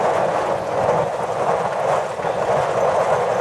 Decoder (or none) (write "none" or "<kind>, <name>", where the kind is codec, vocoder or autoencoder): vocoder, Vocos